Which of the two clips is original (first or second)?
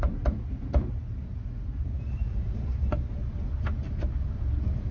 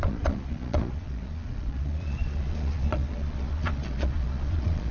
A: first